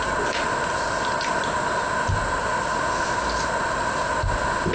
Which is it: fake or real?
real